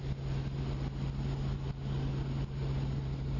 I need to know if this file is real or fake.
real